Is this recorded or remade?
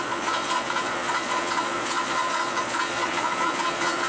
remade